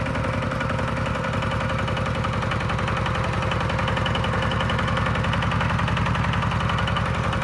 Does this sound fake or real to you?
real